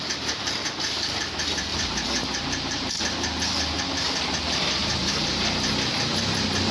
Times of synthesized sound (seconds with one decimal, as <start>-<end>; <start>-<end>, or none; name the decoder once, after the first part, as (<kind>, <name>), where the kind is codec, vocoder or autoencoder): 1.7-3.0 (vocoder, BigVGAN v2); 4.8-5.7